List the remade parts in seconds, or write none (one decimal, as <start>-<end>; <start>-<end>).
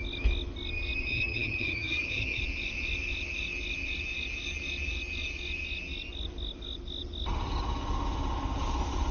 1.1-2.4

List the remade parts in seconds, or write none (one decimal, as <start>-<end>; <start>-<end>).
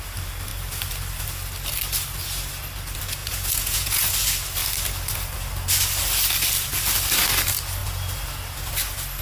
3.2-4.1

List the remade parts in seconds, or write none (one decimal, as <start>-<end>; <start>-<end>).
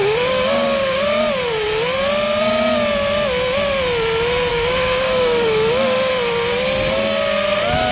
0.0-1.2; 4.5-6.1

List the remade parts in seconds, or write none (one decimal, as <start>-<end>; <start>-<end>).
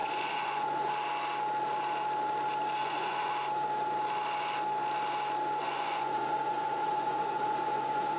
0.0-0.9; 2.8-3.3; 5.6-8.2